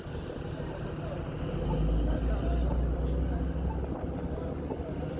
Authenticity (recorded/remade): recorded